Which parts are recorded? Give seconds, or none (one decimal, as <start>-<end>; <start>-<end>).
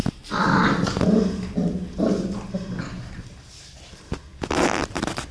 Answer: 0.0-5.3